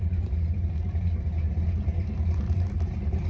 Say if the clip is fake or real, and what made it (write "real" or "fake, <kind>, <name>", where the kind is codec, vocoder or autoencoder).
fake, vocoder, BigVGAN v2